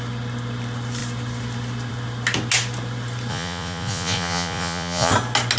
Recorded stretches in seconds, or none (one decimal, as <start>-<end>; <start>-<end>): 0.0-3.3; 5.1-5.6